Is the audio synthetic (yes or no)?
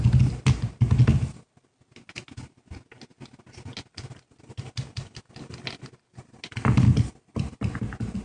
no